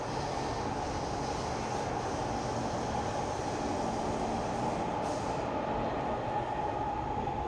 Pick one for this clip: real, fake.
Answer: real